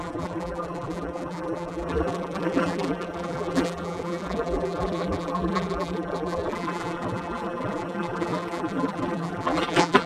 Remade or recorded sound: remade